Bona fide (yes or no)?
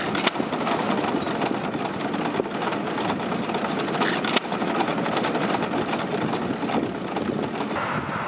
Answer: yes